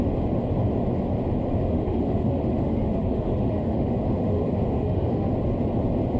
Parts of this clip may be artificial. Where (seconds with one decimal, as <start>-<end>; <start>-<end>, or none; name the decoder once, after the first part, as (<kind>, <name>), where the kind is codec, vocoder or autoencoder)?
1.6-5.3 (autoencoder, DAC-VAE)